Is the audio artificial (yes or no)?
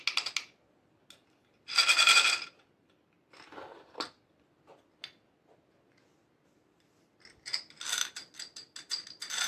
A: no